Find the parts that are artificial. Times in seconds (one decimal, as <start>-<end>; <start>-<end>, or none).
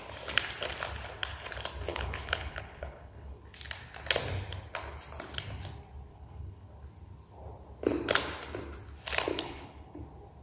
1.9-3.4; 6.1-6.7; 9.3-10.0